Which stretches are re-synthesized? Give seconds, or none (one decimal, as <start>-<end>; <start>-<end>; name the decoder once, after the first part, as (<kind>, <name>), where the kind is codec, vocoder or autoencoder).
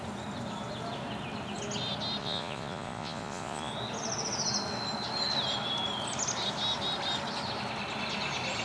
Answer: 2.2-3.7 (vocoder, Vocos)